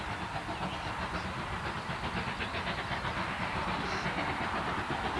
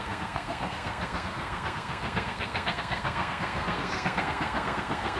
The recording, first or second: first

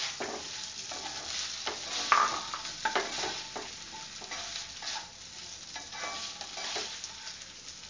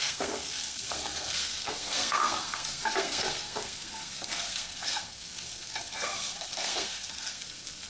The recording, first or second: first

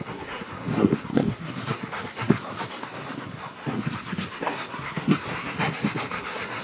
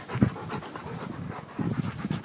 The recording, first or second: second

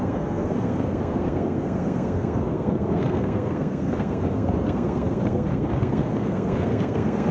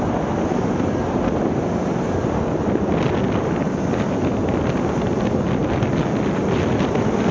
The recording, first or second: second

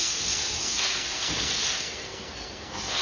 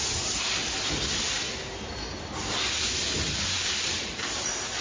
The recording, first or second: second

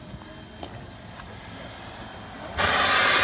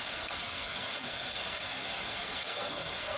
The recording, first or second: first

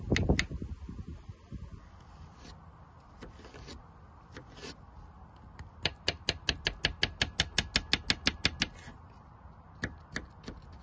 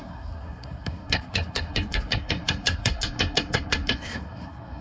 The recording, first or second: first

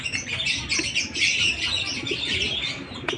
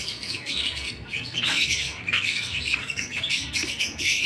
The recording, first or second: first